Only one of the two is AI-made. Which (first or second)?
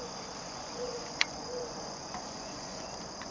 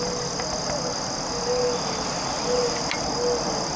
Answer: first